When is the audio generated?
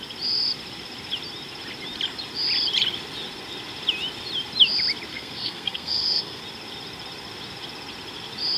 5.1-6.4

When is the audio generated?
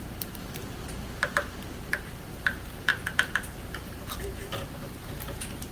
0.0-5.7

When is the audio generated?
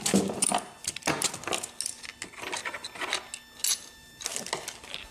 none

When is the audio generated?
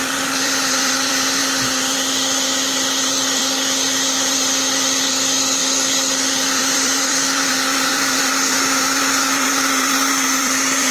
0.0-10.9